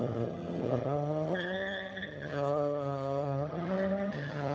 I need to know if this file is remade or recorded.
remade